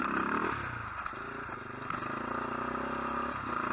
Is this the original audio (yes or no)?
yes